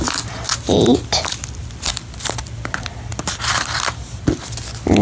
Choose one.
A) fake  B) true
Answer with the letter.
B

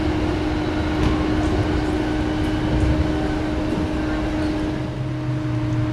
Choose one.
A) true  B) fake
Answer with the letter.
A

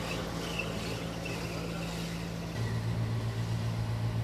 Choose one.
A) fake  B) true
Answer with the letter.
B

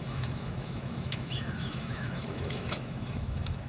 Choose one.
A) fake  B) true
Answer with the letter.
A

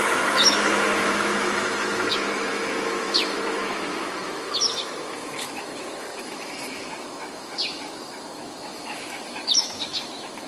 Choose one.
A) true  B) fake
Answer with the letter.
B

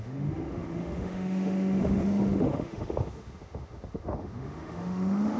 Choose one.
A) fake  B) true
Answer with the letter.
A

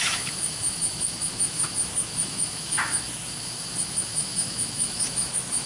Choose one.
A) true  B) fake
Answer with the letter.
B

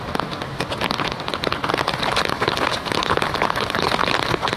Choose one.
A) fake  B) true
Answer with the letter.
B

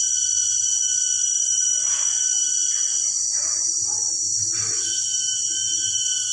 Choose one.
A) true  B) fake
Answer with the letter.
A